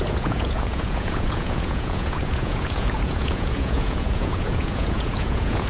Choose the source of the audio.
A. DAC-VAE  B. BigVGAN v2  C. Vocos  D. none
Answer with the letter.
C